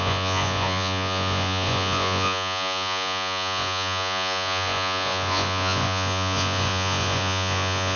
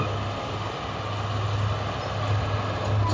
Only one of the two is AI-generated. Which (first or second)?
first